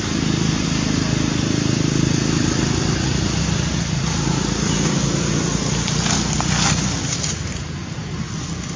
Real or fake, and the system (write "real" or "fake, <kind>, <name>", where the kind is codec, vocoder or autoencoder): real